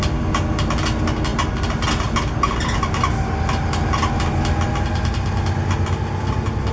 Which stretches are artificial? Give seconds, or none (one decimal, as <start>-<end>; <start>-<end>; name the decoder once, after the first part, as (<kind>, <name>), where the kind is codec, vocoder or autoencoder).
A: none